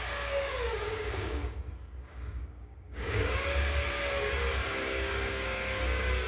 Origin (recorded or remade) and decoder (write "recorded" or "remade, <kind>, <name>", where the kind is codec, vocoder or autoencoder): remade, codec, DAC